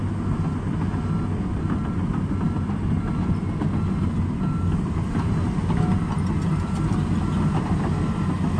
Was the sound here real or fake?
real